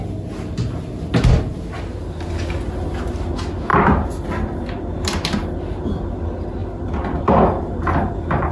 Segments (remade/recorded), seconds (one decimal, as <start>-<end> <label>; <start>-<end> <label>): 0.0-3.7 recorded; 3.7-6.1 remade; 6.1-6.6 recorded; 6.6-7.7 remade; 7.7-8.5 recorded